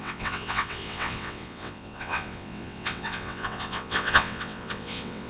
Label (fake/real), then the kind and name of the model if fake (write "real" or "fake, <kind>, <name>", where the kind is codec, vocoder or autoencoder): fake, vocoder, WaveNeXt